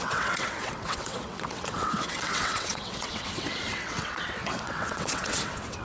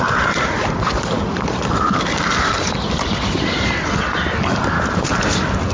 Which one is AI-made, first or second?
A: first